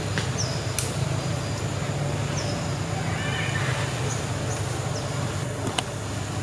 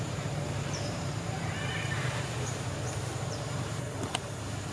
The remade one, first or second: second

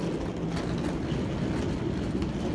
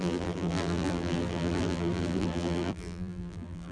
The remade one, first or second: second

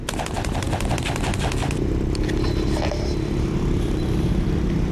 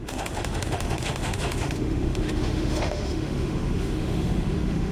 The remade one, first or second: second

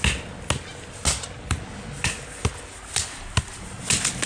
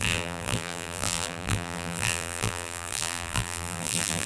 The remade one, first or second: second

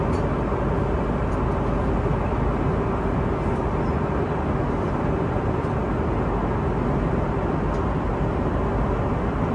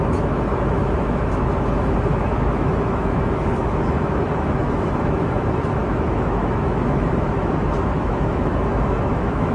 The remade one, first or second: second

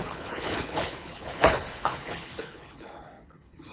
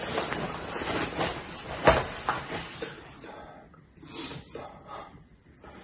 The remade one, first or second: first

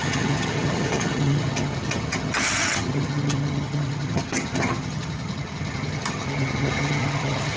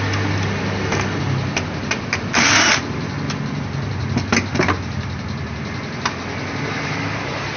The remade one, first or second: first